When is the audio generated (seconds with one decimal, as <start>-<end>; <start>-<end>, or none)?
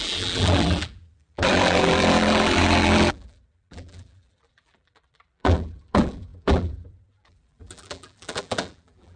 0.0-9.2